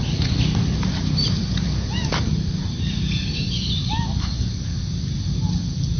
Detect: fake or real real